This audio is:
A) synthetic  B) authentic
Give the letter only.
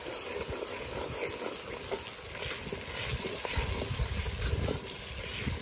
B